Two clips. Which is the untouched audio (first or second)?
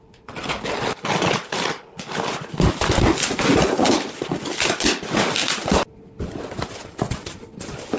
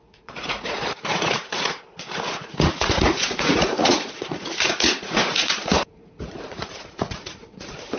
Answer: first